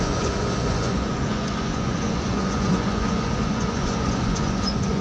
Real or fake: fake